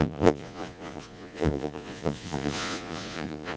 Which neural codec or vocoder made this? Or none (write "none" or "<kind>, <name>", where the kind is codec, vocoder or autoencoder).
vocoder, Vocos